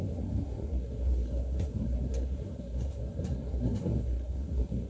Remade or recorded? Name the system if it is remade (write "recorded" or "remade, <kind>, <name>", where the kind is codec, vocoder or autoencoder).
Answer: remade, codec, SNAC